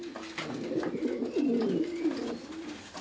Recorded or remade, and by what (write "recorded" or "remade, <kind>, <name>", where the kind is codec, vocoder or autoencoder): recorded